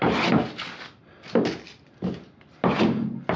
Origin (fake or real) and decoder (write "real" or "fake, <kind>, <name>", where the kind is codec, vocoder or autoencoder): real